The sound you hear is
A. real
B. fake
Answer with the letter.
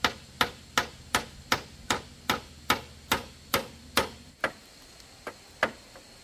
A